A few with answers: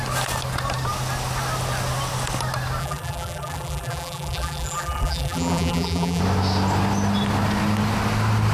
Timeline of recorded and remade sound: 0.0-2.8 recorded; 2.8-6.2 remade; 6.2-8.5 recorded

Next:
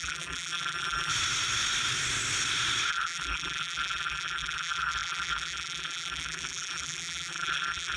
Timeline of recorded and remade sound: 0.0-1.1 remade; 1.1-2.9 recorded; 2.9-8.0 remade